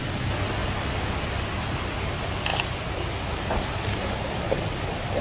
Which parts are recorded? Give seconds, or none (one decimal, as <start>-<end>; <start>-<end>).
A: 0.0-5.2